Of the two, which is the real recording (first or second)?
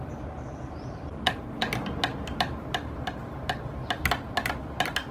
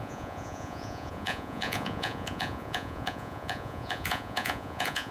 first